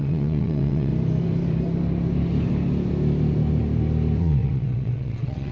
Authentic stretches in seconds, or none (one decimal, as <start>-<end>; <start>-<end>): 0.9-4.2